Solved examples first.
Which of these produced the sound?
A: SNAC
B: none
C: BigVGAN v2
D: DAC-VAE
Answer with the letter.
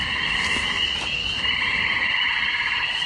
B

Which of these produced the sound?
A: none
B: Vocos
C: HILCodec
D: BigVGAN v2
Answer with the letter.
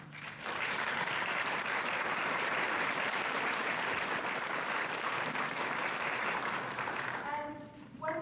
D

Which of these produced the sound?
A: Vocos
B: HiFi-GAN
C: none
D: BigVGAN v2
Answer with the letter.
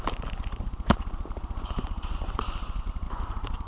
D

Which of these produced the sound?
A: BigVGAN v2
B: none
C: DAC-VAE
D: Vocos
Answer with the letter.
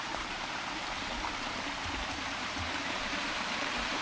A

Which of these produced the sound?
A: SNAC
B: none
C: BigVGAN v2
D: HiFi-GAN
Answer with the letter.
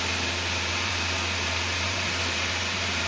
C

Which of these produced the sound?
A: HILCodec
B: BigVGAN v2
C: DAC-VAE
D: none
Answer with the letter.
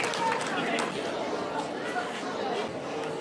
D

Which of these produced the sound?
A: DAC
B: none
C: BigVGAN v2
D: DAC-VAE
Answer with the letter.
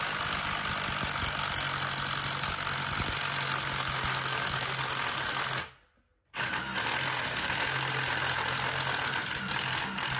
B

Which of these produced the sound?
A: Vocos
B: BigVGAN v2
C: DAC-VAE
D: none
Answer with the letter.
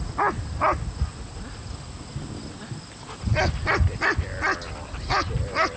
D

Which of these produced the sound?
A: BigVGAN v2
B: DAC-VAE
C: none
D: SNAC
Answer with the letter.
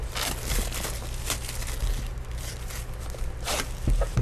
C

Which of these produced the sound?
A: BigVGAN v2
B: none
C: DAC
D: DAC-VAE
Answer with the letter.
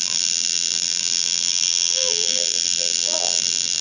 A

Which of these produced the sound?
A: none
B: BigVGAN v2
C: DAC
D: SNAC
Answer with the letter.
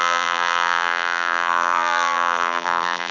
B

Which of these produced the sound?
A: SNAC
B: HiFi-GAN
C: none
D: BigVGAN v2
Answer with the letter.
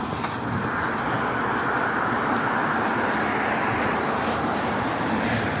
C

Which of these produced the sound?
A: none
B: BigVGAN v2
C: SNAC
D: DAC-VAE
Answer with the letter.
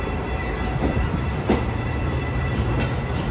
A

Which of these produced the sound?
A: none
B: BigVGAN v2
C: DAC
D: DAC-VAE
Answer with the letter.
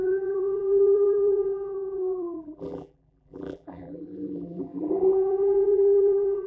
B